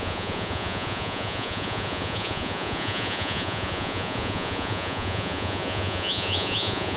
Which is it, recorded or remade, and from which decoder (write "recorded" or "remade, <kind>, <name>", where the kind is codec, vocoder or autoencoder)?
remade, vocoder, Vocos